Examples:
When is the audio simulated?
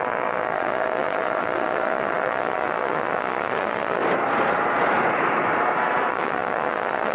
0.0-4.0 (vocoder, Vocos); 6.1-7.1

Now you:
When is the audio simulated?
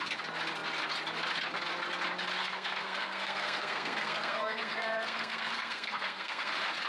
2.4-6.5 (codec, SNAC)